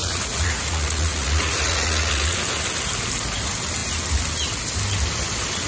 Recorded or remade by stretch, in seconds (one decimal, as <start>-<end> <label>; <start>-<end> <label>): 0.0-2.4 remade; 2.4-5.7 recorded